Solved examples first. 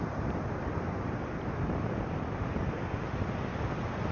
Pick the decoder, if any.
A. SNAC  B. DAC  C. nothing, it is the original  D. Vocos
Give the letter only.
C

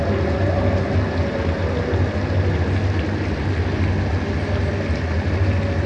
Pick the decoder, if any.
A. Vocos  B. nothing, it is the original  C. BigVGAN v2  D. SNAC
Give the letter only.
B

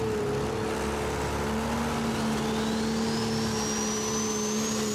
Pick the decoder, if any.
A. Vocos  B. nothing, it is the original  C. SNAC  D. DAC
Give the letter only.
B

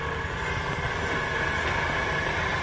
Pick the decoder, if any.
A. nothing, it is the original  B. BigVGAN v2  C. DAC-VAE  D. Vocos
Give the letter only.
A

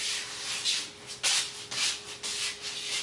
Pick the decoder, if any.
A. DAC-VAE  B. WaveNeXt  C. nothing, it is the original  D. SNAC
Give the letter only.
C